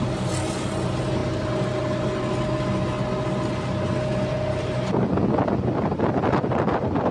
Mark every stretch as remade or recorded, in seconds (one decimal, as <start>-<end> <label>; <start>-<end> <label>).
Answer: 0.0-7.1 recorded